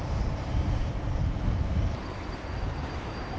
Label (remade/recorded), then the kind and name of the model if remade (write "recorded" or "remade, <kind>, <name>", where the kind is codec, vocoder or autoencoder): recorded